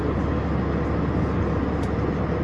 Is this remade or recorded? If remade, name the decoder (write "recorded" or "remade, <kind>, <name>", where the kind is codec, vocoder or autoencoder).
recorded